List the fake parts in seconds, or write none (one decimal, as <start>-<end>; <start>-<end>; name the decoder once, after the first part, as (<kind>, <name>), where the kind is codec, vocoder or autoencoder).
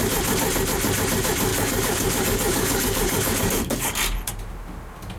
1.5-4.0 (codec, DAC)